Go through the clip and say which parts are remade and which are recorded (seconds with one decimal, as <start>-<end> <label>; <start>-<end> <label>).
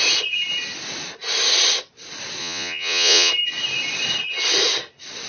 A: 0.0-2.4 recorded; 2.4-3.3 remade; 3.3-5.3 recorded